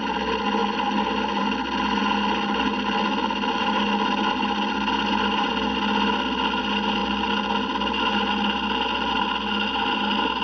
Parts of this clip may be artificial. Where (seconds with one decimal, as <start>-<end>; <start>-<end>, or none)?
none

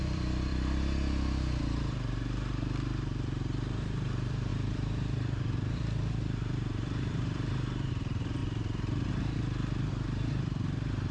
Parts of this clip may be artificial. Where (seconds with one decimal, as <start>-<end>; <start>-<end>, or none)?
0.0-0.5; 1.6-8.4; 9.9-11.1